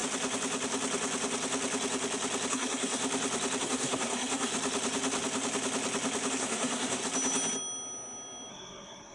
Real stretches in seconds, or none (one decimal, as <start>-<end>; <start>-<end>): 0.0-2.5; 3.0-3.6; 4.5-6.3; 7.0-8.5